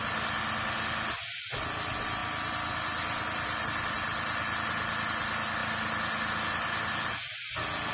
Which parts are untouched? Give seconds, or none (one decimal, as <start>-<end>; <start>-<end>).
0.0-7.9